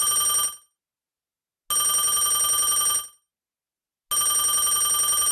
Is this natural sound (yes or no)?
yes